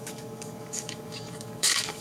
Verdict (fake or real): fake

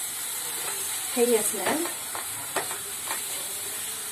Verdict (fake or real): fake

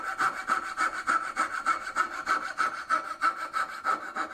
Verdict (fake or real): fake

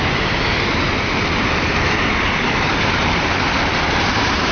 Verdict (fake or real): real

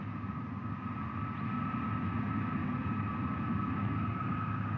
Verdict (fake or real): real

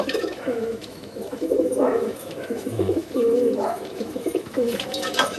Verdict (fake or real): fake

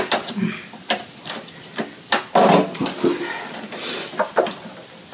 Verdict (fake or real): real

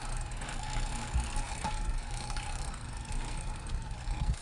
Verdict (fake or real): fake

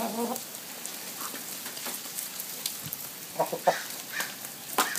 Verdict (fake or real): real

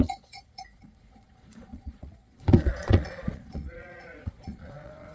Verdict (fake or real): fake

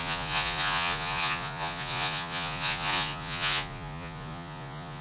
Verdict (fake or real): fake